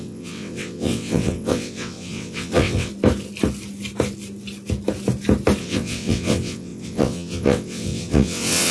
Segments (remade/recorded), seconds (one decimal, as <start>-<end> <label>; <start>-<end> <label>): 0.0-2.9 remade; 2.9-5.6 recorded; 5.6-8.7 remade

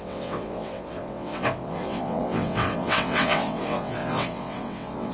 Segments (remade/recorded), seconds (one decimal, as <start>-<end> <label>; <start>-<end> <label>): 0.0-5.1 remade

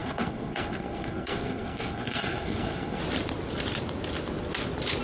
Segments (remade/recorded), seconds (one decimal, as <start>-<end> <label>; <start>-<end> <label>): 0.0-3.0 remade; 3.0-5.0 recorded

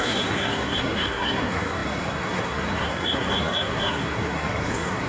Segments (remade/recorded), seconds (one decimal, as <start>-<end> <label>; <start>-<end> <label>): 0.0-5.1 remade